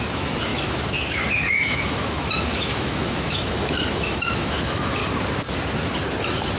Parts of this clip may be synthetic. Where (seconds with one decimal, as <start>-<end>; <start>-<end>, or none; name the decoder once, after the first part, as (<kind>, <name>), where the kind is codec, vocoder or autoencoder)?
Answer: 0.0-5.0 (autoencoder, DAC-VAE)